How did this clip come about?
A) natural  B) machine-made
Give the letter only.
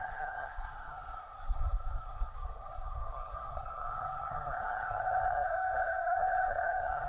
B